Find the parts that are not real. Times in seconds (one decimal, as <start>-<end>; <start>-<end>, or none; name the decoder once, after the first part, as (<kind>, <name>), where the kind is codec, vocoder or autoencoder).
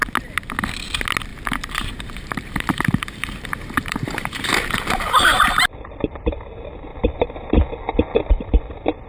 1.3-5.4 (vocoder, BigVGAN v2); 6.9-7.5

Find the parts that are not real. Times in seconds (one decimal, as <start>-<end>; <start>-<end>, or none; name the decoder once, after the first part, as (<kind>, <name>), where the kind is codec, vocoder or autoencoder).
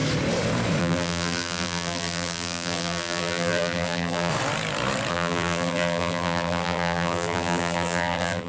0.8-4.3 (vocoder, BigVGAN v2); 5.1-8.5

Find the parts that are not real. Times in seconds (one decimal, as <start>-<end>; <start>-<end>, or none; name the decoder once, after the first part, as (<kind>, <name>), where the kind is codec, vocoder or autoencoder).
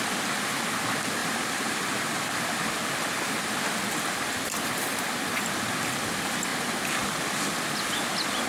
1.2-2.4 (vocoder, BigVGAN v2); 6.5-7.5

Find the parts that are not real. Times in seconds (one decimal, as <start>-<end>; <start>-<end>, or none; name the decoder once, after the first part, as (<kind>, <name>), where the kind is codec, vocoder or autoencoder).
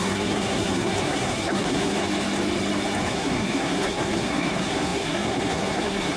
0.0-2.0 (codec, SNAC); 3.1-6.2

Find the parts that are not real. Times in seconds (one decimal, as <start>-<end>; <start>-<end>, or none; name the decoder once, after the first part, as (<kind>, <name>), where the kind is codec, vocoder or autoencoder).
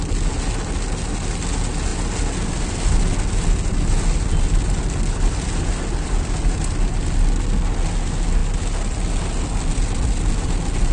none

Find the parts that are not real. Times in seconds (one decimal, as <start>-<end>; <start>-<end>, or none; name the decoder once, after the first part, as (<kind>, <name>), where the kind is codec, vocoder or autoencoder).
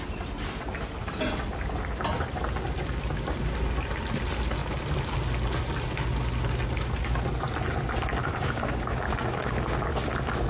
8.2-9.8 (codec, DAC)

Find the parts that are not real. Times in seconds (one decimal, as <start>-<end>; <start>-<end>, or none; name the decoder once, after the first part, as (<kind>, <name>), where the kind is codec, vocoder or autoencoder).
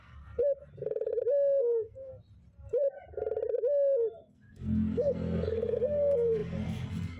0.0-0.4 (codec, SNAC); 1.6-2.1; 4.2-7.2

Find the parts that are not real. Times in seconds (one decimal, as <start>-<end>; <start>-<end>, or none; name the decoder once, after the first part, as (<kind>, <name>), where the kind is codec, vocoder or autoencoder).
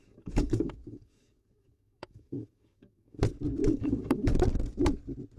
0.0-3.2 (codec, DAC); 3.6-4.3